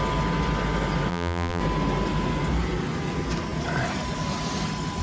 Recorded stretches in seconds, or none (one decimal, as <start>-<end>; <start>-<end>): 0.0-1.1; 1.6-5.0